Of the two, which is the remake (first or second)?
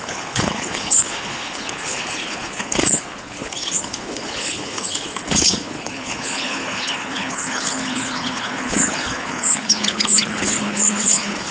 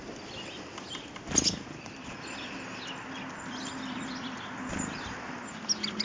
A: first